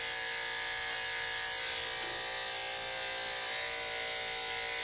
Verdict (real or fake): real